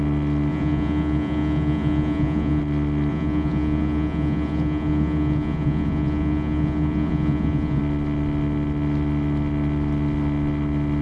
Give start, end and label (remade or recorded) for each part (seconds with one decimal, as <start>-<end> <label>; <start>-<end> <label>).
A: 0.0-0.5 recorded; 0.5-2.6 remade; 2.6-3.1 recorded; 3.1-7.8 remade; 7.8-11.0 recorded